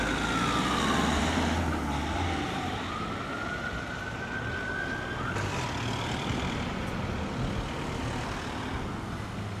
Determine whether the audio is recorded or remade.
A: recorded